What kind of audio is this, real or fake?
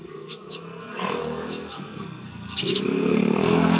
fake